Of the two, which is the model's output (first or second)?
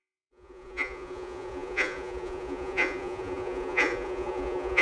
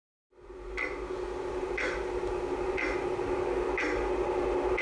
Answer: first